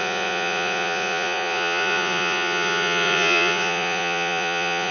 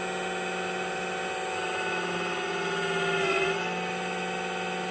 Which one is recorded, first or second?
second